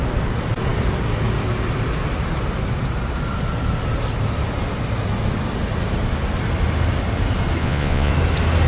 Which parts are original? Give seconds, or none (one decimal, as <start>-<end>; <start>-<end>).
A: 0.0-7.6; 8.1-8.7